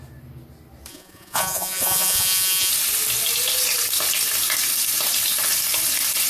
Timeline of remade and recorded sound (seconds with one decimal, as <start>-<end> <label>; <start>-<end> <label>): 0.0-0.9 recorded; 0.9-2.7 remade; 2.7-6.3 recorded